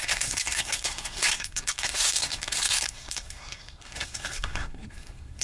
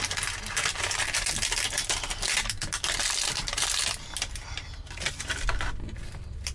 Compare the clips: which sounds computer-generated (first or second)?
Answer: first